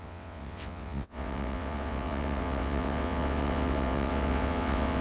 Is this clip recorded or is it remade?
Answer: remade